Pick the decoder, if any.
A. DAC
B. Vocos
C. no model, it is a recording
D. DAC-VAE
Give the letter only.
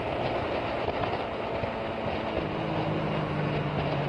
C